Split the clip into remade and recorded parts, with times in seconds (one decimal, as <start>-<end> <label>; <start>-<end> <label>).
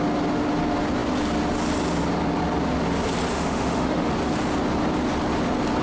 0.0-3.3 recorded; 3.3-4.1 remade; 4.1-5.8 recorded